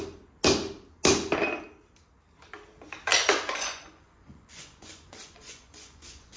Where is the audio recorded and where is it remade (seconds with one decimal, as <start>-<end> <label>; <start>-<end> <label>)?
0.0-3.1 recorded; 3.1-6.4 remade